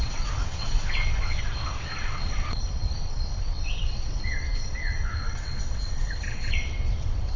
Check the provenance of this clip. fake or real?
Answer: fake